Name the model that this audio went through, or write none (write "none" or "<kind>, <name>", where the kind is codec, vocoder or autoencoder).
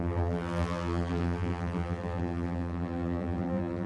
vocoder, BigVGAN v2